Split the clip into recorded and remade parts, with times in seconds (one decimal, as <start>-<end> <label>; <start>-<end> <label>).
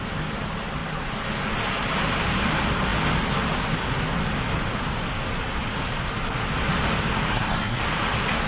0.0-7.3 recorded; 7.3-7.8 remade; 7.8-8.5 recorded